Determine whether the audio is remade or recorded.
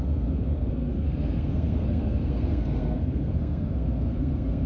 remade